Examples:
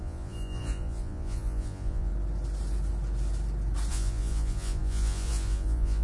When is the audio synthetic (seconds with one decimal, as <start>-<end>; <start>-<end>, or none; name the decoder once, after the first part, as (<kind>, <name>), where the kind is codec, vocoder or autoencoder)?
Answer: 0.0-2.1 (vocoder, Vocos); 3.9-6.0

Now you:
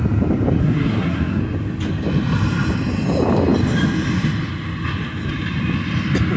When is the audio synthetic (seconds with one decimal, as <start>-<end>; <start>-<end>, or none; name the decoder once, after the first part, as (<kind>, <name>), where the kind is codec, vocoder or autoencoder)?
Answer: 0.6-1.4 (codec, SNAC)

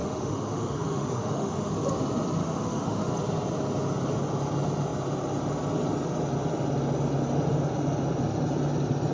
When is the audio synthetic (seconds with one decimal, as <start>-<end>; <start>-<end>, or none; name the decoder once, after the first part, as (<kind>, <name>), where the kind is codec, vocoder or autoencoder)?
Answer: 0.0-1.7 (autoencoder, DAC-VAE); 2.4-3.1

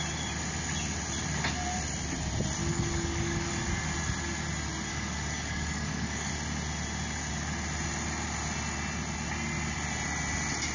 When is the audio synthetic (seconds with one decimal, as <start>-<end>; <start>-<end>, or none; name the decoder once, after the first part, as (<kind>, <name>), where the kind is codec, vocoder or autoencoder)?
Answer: 2.6-3.5 (codec, DAC); 4.9-6.3